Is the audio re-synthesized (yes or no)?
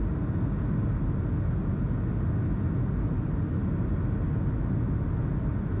no